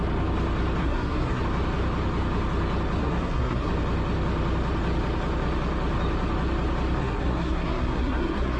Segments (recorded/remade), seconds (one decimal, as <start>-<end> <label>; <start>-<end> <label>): 0.0-0.8 recorded; 0.8-1.4 remade; 1.4-3.0 recorded; 3.0-3.7 remade; 3.7-7.0 recorded; 7.0-8.6 remade